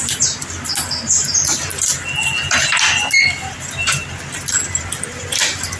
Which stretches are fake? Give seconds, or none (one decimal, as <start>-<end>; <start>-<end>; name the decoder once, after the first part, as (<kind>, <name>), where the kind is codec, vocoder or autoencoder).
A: none